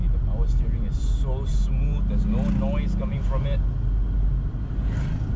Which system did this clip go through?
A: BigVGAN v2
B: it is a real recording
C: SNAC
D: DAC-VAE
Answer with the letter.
B